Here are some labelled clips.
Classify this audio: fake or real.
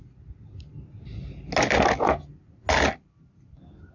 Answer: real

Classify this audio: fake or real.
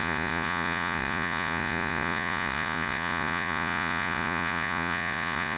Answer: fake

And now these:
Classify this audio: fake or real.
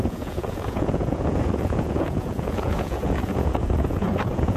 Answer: fake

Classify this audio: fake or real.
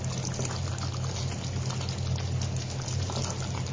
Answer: real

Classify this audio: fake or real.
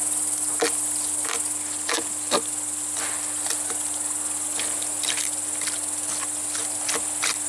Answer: real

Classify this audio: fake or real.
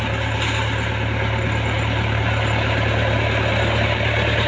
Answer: real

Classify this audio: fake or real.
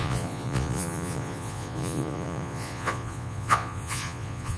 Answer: fake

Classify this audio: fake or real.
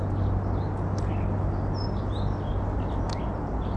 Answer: real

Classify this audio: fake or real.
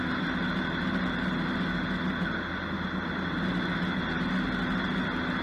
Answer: real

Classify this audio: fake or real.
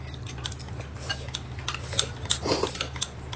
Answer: real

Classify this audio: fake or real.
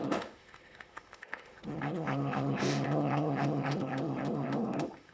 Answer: fake